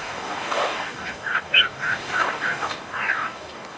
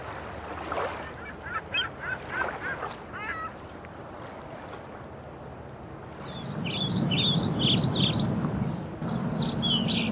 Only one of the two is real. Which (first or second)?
second